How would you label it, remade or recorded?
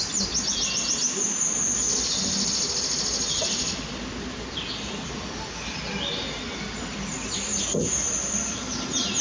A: recorded